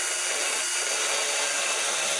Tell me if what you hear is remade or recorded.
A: recorded